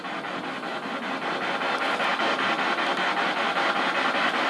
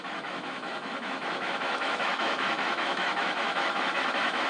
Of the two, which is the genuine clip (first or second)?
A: first